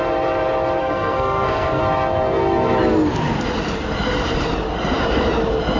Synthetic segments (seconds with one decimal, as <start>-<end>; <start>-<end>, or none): 0.8-1.8